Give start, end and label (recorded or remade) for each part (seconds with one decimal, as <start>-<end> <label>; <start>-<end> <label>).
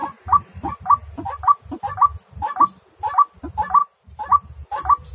0.0-5.1 recorded